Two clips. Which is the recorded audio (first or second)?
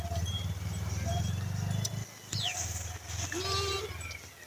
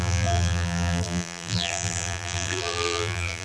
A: first